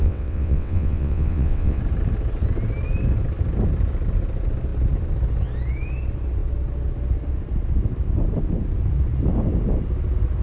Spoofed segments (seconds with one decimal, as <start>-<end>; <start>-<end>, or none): 0.0-1.8